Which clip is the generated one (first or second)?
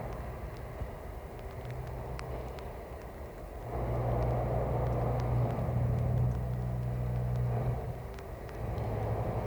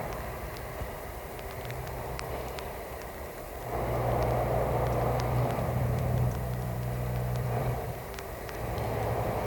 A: second